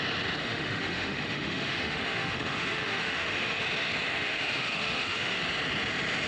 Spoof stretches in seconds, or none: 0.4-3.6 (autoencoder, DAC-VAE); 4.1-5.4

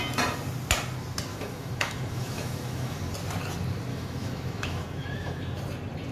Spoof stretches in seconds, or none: 1.3-3.0 (autoencoder, DAC-VAE); 3.9-5.6